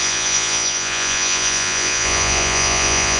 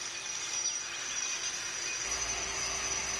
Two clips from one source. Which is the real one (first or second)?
second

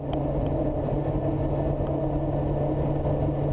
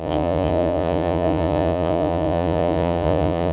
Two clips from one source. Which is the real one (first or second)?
first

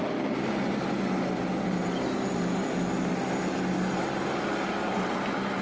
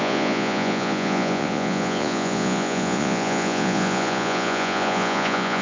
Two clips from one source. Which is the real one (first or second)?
first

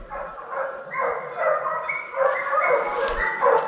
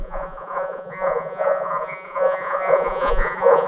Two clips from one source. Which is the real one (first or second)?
first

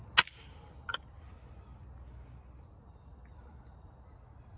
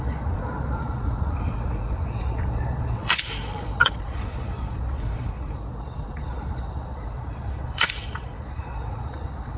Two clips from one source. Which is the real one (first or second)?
first